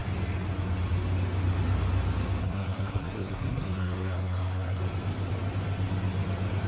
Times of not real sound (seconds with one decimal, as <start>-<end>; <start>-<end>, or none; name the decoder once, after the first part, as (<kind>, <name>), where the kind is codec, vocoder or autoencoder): 2.4-4.8 (codec, SNAC)